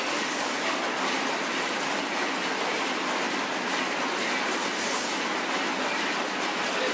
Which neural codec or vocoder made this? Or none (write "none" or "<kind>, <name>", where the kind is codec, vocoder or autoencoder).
none